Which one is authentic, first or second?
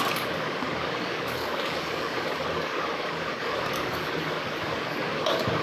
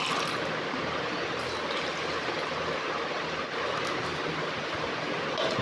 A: second